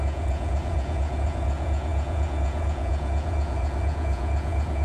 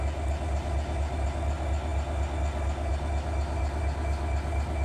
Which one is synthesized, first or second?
first